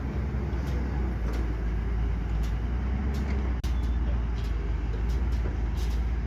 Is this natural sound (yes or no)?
yes